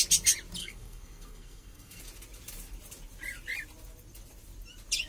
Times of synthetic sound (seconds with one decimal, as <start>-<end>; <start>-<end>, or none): 0.6-2.0